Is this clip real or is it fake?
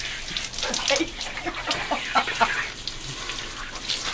real